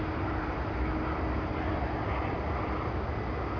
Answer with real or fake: real